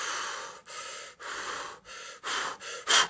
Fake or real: real